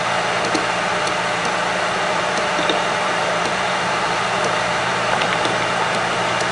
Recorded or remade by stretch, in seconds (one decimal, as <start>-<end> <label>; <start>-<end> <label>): 0.0-2.1 recorded; 2.1-6.0 remade; 6.0-6.5 recorded